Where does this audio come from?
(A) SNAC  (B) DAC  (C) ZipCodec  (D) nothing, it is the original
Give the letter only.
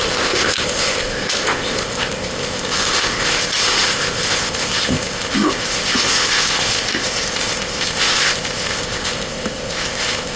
C